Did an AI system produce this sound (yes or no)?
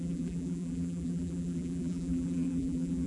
yes